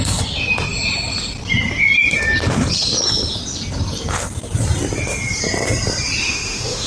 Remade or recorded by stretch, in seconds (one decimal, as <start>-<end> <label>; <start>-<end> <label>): 0.0-6.2 recorded; 6.2-6.9 remade

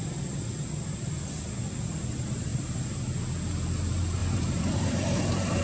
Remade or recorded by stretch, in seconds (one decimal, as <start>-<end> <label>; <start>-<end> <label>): 0.0-2.5 recorded; 2.5-3.1 remade; 3.1-4.2 recorded; 4.2-5.6 remade

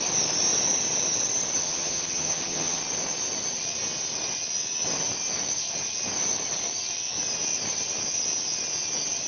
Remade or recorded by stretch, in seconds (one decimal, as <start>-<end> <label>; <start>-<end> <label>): 0.0-1.6 recorded; 1.6-2.8 remade; 2.8-9.3 recorded

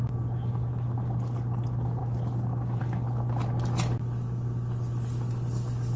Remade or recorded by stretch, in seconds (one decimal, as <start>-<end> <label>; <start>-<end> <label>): 0.0-6.0 recorded

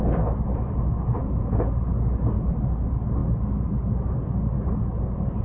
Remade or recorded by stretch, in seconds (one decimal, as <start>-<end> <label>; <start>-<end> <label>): 0.0-1.2 recorded; 1.2-1.7 remade; 1.7-5.4 recorded

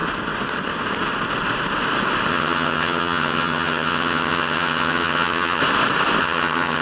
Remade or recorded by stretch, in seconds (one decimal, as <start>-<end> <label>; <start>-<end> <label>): 0.0-2.3 recorded; 2.3-5.6 remade; 5.6-6.2 recorded; 6.2-6.8 remade

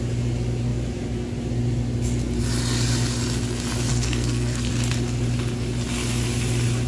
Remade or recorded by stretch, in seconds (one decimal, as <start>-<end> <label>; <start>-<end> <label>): 0.0-3.9 recorded; 3.9-4.7 remade; 4.7-6.9 recorded